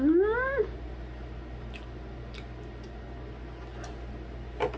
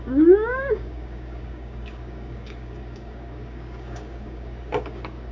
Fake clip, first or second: second